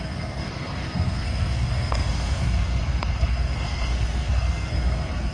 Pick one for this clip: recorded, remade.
remade